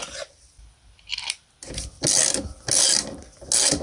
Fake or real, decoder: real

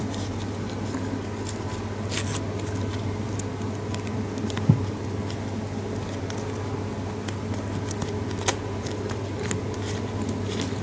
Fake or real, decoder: real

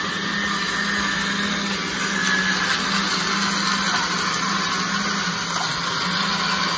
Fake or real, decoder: real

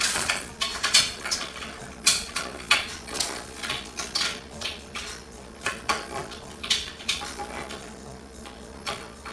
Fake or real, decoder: fake, vocoder, Vocos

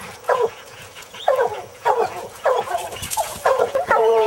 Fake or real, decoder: fake, vocoder, Vocos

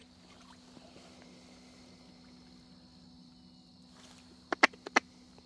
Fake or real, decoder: real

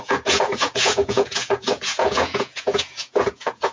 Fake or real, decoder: fake, vocoder, Vocos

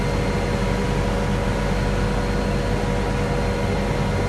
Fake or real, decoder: real